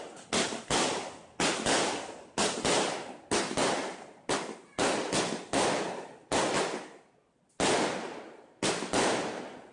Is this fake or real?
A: real